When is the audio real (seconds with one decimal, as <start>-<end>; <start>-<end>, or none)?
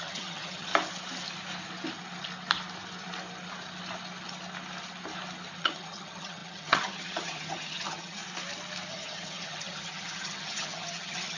0.7-5.6; 8.2-8.9